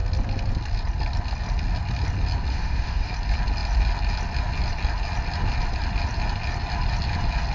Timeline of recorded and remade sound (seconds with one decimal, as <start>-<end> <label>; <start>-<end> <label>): 0.0-2.5 recorded; 2.5-3.1 remade; 3.1-7.5 recorded